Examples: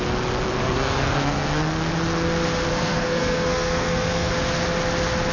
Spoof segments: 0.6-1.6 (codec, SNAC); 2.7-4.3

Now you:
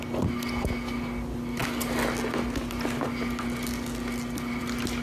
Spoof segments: none

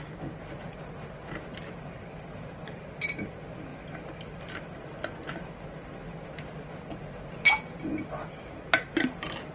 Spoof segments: none

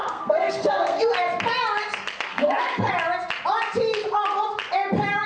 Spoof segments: 0.0-1.1 (codec, SNAC); 2.3-2.9